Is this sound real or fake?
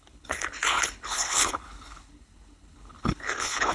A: fake